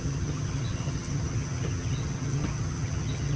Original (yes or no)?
no